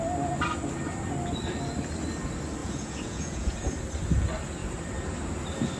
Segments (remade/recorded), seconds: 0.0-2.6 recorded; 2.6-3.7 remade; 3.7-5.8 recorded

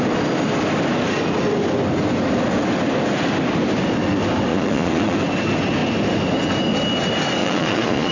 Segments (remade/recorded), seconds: 0.0-4.5 recorded; 4.5-5.2 remade; 5.2-7.4 recorded; 7.4-8.1 remade

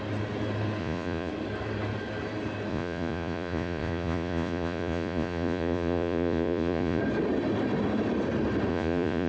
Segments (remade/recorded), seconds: 0.0-0.8 recorded; 0.8-1.3 remade; 1.3-2.7 recorded; 2.7-7.0 remade; 7.0-8.7 recorded; 8.7-9.3 remade